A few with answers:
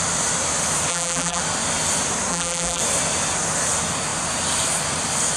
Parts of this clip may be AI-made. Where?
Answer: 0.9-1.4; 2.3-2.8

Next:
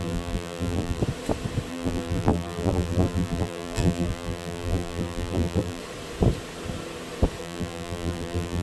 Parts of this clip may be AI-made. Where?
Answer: 0.0-1.0; 1.7-5.8; 7.4-8.6

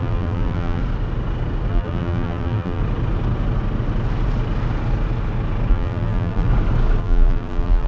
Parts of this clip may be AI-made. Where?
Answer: 0.0-0.8; 1.7-2.8; 5.7-6.5; 7.0-7.9

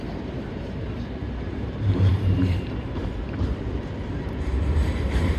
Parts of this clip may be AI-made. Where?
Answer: 0.0-5.4

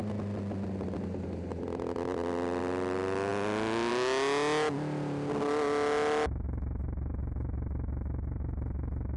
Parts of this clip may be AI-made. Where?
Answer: none

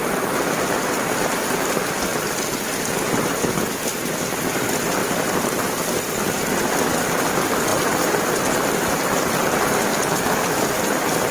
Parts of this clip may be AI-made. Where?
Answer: 5.0-6.1; 7.7-8.4

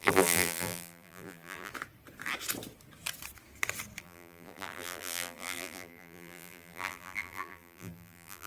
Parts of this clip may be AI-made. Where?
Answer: 0.0-1.7; 4.0-8.5